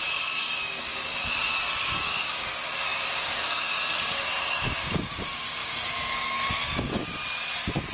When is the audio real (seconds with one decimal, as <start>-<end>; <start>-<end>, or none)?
7.2-7.9